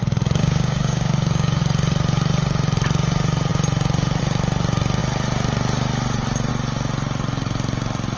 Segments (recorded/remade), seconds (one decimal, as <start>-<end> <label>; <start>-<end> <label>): 0.0-0.4 recorded; 0.4-1.6 remade; 1.6-8.2 recorded